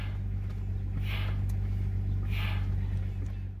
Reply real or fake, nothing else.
real